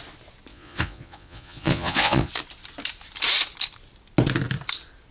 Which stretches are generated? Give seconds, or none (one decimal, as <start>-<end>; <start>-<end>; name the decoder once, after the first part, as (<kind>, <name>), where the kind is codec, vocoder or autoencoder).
0.5-2.3 (vocoder, Vocos)